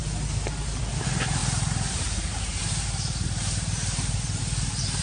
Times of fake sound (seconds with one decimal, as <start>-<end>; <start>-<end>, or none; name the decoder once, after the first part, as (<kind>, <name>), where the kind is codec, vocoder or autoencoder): 1.4-4.4 (vocoder, BigVGAN v2)